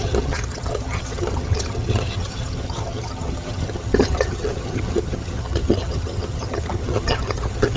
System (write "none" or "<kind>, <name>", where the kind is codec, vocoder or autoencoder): vocoder, HiFi-GAN